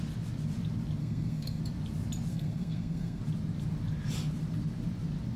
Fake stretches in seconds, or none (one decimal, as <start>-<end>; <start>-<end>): 1.0-1.6; 2.3-3.2